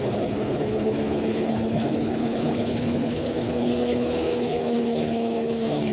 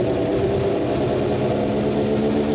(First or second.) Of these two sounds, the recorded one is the second